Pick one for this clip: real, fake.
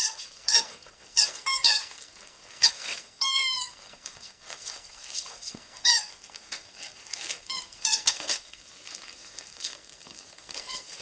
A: fake